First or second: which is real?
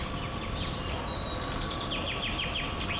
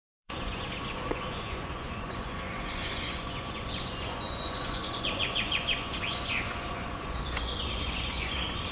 first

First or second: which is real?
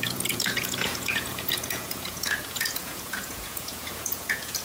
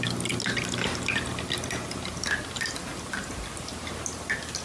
second